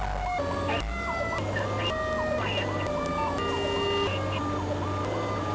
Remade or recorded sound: recorded